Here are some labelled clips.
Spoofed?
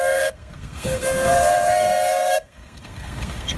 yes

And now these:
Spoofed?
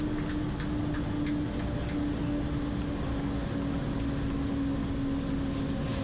no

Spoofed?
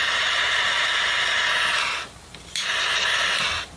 no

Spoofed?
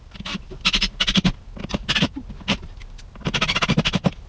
no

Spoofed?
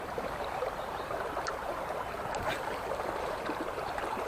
yes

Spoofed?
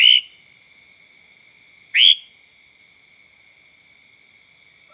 no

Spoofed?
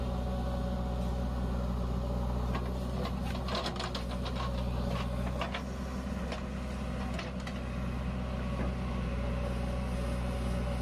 no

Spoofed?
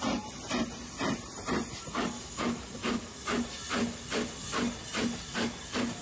no